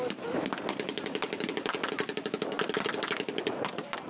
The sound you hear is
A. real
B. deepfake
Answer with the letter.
A